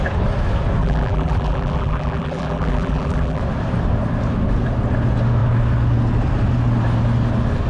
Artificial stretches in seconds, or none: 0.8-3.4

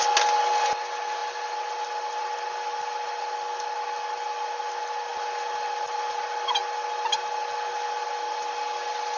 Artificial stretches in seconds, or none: none

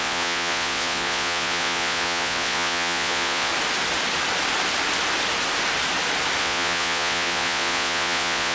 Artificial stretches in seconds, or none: 0.0-3.5; 6.4-8.5

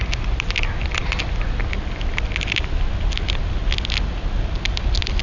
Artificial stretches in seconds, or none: none

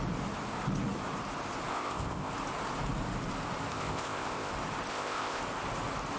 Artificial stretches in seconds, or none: 1.7-2.3; 3.7-4.5; 4.9-5.4

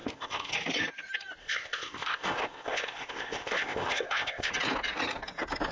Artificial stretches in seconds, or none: 0.0-0.5; 1.4-4.5